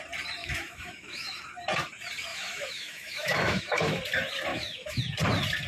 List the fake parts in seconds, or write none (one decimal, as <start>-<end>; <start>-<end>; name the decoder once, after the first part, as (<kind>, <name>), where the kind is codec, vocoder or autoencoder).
0.4-1.4 (autoencoder, DAC-VAE); 2.3-4.0; 4.5-5.0